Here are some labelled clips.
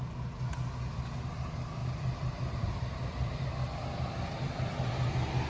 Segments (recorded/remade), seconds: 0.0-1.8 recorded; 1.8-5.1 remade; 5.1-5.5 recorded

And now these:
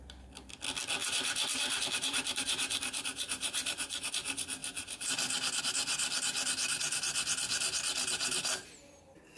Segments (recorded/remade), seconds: 0.0-1.0 recorded; 1.0-4.1 remade; 4.1-9.4 recorded